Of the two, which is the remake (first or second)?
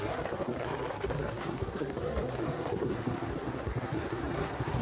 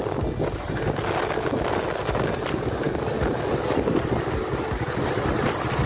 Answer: first